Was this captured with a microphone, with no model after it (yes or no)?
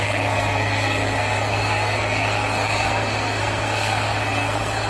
no